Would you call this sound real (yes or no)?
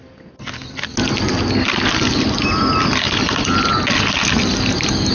yes